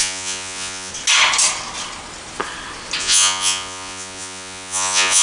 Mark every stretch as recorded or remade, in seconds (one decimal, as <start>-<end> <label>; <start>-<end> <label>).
0.0-0.9 remade; 0.9-3.0 recorded; 3.0-5.2 remade